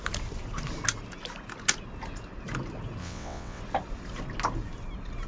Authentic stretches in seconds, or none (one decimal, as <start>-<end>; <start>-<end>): 0.0-3.0; 3.6-5.3